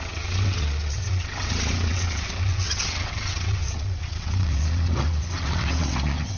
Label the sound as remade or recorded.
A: remade